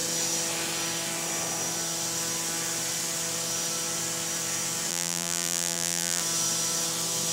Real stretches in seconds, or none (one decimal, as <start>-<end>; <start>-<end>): 0.0-4.9; 6.2-7.3